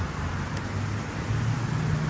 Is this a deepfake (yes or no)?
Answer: no